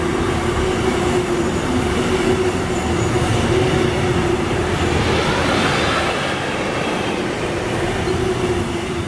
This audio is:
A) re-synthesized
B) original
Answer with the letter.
B